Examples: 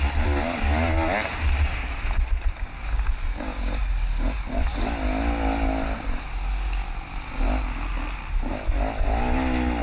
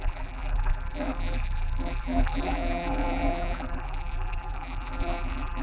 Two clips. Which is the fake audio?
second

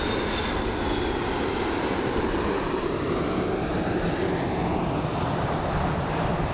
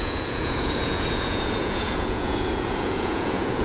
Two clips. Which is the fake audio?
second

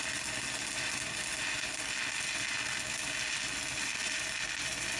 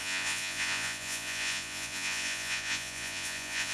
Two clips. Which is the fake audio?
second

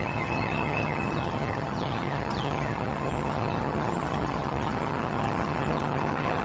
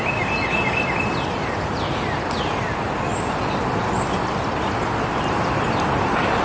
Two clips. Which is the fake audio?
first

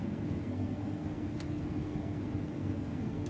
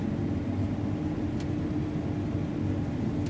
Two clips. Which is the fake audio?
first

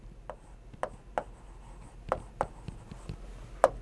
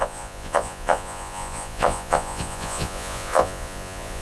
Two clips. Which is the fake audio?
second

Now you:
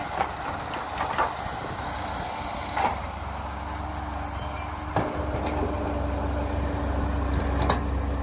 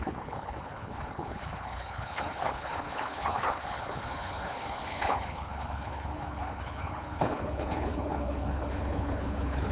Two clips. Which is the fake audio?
second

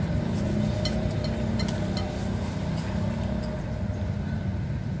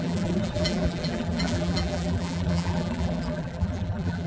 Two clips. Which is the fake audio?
second